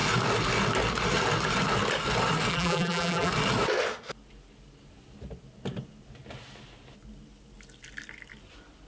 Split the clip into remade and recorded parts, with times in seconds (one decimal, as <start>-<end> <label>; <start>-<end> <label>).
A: 0.0-2.5 recorded; 2.5-3.3 remade; 3.3-8.9 recorded